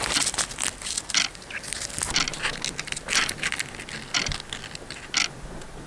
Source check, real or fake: real